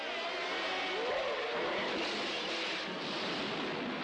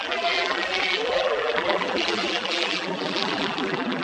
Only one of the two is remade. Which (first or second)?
second